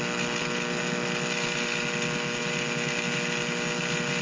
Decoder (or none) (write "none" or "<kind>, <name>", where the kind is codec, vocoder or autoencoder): none